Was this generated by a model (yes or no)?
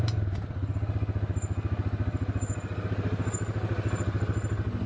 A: no